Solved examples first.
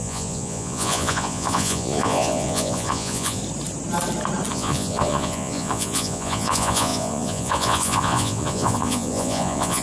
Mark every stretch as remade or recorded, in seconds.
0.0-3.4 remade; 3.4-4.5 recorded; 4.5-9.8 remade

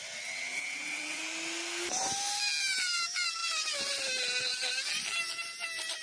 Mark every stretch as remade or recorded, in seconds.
0.0-1.2 remade; 1.2-6.0 recorded